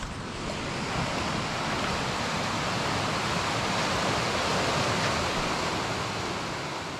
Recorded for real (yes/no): yes